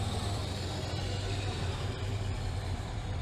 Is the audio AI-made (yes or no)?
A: yes